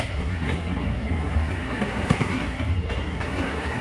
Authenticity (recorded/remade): remade